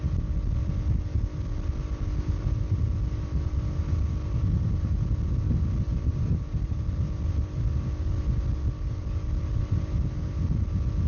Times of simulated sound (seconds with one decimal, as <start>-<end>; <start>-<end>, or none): 5.9-8.1; 9.0-9.6